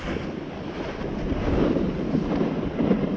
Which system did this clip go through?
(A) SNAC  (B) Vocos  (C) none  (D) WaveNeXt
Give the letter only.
C